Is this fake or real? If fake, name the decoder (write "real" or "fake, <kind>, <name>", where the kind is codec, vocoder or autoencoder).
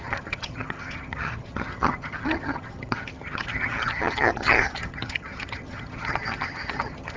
fake, vocoder, HiFi-GAN